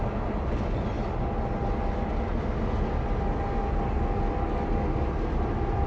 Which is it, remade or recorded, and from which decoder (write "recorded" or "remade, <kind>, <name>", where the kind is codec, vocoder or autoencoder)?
recorded